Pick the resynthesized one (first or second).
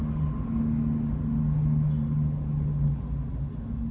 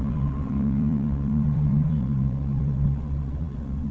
second